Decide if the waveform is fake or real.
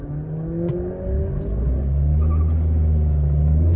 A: real